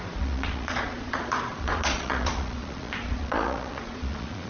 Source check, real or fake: fake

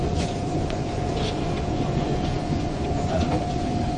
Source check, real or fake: fake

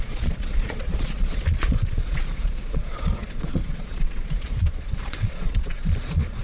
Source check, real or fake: fake